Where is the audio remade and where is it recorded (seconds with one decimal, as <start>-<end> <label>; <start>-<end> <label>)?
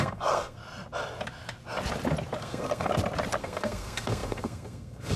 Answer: 0.0-0.6 remade; 0.6-2.4 recorded; 2.4-2.9 remade; 2.9-3.4 recorded; 3.4-5.2 remade